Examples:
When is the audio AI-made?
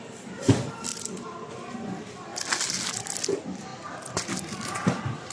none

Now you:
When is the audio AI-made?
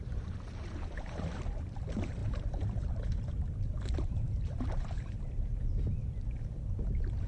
0.0-6.0 (vocoder, BigVGAN v2)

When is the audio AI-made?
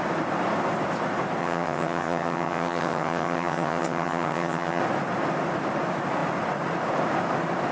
1.4-4.8 (vocoder, HiFi-GAN)